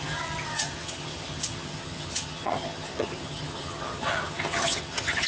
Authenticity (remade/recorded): remade